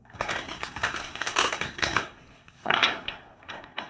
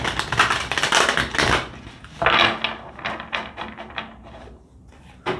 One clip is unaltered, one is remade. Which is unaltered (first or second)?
second